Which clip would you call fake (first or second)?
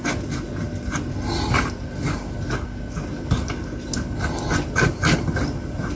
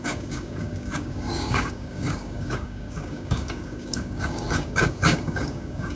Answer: second